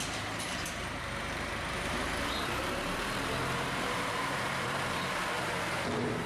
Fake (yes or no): yes